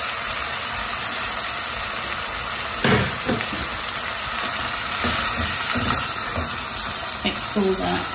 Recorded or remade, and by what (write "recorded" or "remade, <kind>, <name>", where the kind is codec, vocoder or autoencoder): recorded